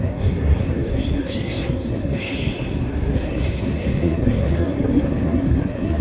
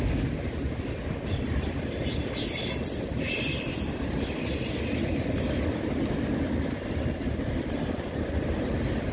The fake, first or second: first